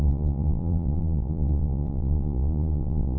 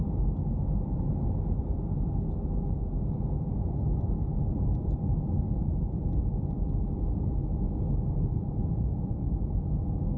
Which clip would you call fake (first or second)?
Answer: first